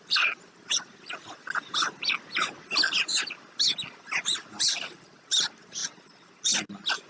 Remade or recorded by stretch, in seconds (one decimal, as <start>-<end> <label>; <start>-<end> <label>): 0.0-7.1 recorded